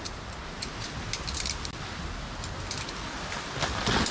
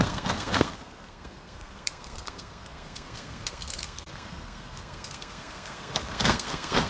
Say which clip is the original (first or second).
first